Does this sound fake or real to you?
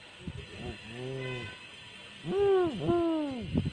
real